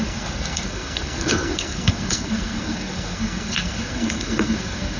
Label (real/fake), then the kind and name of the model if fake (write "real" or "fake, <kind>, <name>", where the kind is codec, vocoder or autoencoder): fake, codec, SNAC